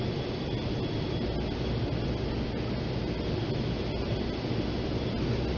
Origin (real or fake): real